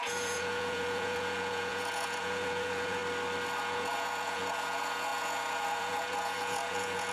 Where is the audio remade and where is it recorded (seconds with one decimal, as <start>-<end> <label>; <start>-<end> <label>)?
0.0-3.0 remade; 3.0-3.6 recorded; 3.6-7.1 remade